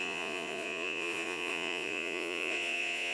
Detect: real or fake fake